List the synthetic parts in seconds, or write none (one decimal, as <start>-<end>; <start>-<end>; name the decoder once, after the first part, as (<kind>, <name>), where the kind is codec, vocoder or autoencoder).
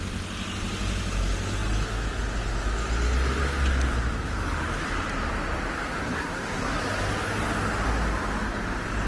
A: 6.0-6.8 (codec, SNAC)